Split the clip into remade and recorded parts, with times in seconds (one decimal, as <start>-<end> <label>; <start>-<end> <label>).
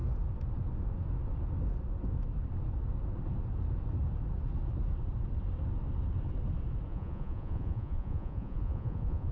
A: 0.0-6.9 recorded; 6.9-9.3 remade